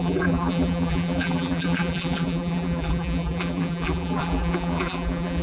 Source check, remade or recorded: remade